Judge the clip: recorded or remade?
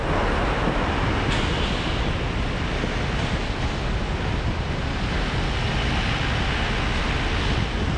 recorded